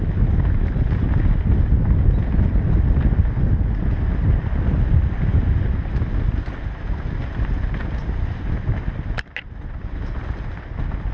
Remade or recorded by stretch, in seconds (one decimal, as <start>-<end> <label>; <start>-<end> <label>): 0.0-11.1 recorded